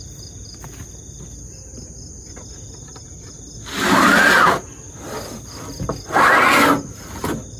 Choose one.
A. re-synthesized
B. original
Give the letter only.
B